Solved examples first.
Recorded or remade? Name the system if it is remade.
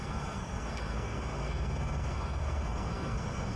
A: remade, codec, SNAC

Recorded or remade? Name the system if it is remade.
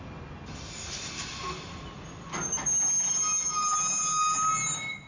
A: recorded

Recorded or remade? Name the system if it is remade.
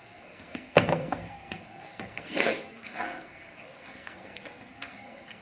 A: remade, codec, SNAC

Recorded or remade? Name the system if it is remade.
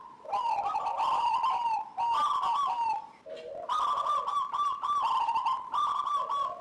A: recorded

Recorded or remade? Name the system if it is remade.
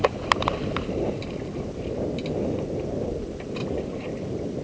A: recorded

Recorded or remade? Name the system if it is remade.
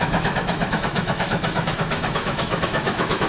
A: remade, autoencoder, DAC-VAE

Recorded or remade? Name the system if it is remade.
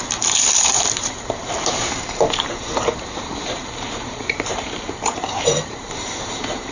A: remade, vocoder, BigVGAN v2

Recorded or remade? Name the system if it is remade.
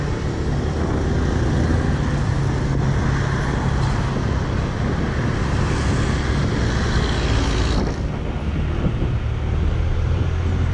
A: recorded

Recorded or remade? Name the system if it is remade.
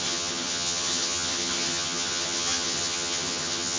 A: remade, vocoder, HiFi-GAN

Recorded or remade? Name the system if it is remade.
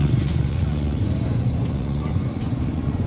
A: remade, vocoder, Vocos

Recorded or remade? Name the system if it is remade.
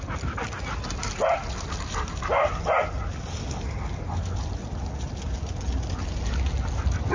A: recorded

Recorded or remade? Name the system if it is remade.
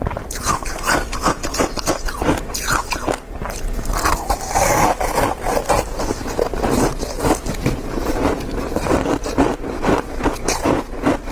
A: recorded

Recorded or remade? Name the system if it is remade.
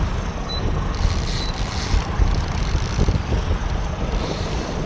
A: remade, vocoder, BigVGAN v2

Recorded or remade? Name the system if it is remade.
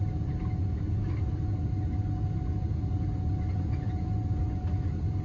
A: recorded